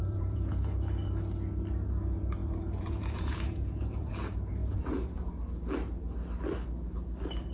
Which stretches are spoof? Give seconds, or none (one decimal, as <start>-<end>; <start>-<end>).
0.0-0.7; 2.4-4.1; 4.6-5.3